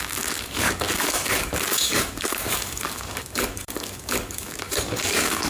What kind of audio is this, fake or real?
fake